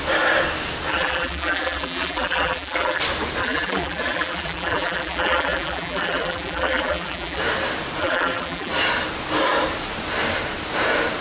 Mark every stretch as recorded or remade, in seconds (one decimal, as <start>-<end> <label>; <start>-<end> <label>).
0.0-0.9 recorded; 0.9-3.0 remade; 3.0-3.4 recorded; 3.4-7.4 remade; 7.4-8.0 recorded; 8.0-8.7 remade; 8.7-11.2 recorded